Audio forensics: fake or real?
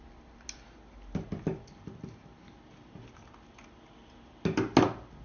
real